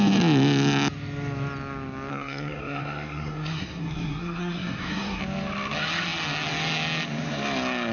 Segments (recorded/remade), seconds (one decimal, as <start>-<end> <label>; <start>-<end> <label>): 0.0-2.1 recorded; 2.1-5.2 remade; 5.2-7.9 recorded